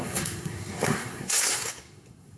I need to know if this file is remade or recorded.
remade